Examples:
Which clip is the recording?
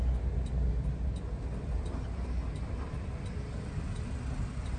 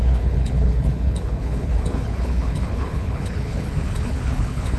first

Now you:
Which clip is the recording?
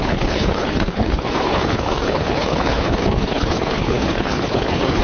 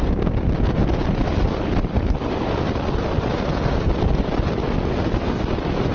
second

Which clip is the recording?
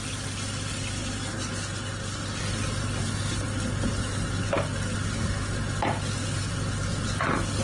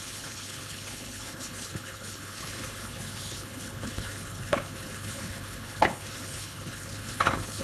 first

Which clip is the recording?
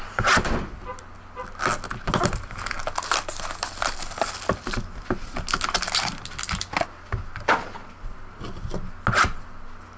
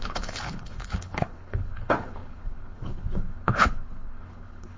first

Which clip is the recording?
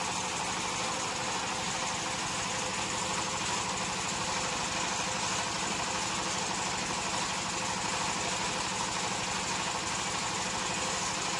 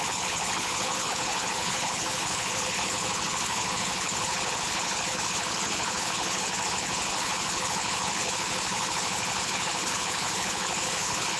first